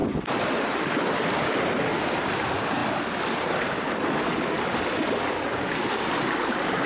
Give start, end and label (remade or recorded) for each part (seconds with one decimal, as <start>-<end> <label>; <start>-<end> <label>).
0.0-6.9 recorded